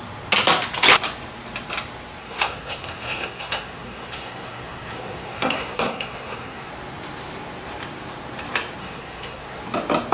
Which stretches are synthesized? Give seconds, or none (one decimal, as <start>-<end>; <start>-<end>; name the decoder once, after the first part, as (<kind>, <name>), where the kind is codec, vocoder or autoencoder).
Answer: 2.2-6.7 (codec, SNAC); 8.8-9.6